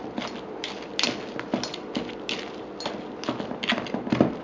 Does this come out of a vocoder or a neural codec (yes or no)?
no